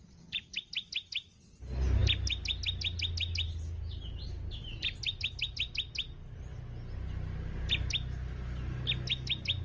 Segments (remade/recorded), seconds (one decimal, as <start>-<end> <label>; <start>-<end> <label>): 0.0-9.6 recorded